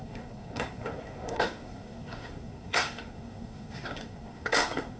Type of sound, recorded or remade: remade